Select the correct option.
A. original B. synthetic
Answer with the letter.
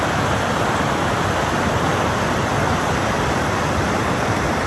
B